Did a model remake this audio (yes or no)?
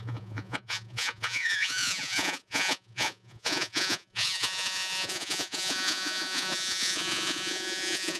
yes